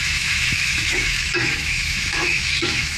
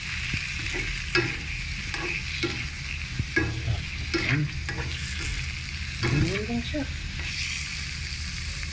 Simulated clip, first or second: first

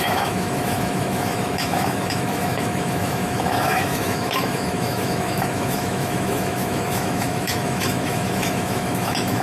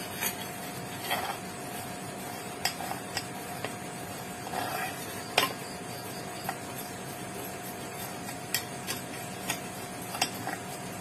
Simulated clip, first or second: first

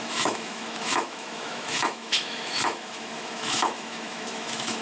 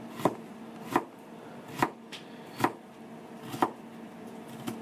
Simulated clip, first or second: first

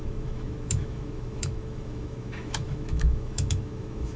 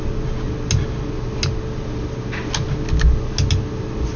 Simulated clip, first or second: first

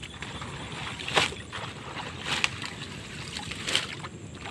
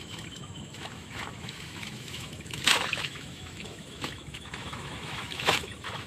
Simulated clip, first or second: second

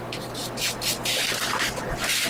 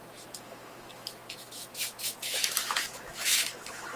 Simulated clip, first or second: second